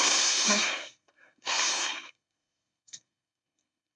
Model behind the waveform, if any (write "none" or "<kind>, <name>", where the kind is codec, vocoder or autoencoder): codec, SNAC